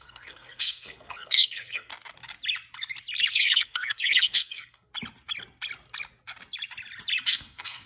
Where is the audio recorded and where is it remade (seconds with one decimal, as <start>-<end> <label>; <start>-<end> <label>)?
0.0-1.9 remade; 1.9-3.3 recorded; 3.3-4.9 remade; 4.9-7.3 recorded; 7.3-7.9 remade